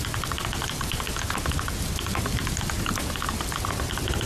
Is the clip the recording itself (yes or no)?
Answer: yes